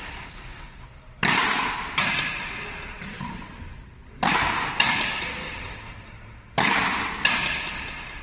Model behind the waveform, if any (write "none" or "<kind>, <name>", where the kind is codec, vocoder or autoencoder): none